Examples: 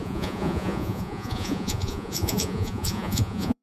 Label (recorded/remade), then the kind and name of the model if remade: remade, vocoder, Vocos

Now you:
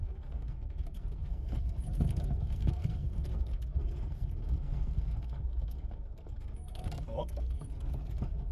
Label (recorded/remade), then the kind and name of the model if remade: remade, codec, SNAC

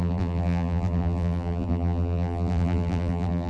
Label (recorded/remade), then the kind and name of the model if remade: remade, vocoder, BigVGAN v2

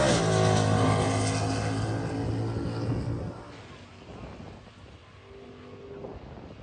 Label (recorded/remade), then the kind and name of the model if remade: recorded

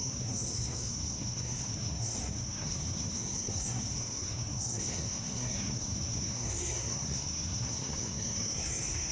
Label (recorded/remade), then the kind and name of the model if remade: remade, codec, SNAC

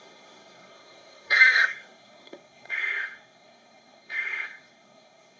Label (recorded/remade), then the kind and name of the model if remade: remade, codec, SNAC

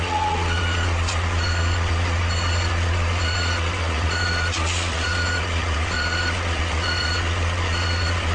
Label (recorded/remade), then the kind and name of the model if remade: remade, vocoder, Vocos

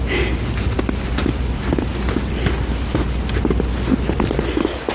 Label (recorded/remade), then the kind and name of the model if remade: recorded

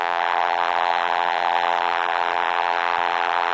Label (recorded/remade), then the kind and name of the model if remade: remade, vocoder, BigVGAN v2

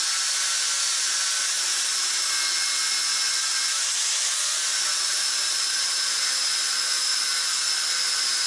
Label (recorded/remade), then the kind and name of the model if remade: recorded